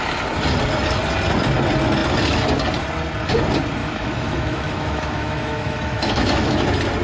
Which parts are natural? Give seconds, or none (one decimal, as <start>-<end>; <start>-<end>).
0.0-3.8; 6.6-7.0